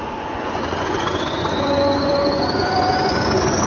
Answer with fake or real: fake